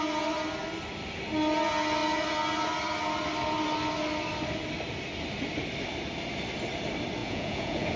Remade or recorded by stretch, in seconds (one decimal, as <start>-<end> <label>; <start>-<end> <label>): 0.0-7.2 recorded; 7.2-8.0 remade